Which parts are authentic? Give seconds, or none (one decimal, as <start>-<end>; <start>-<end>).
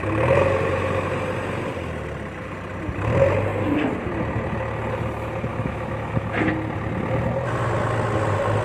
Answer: 0.0-5.5; 6.5-8.6